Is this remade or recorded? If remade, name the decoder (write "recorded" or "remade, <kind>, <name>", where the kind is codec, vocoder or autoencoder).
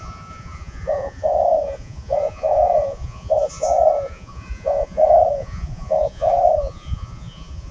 remade, vocoder, Vocos